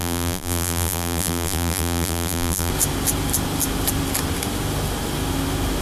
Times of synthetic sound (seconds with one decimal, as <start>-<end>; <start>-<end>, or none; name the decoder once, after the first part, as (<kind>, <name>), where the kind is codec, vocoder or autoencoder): 0.0-2.7 (vocoder, BigVGAN v2)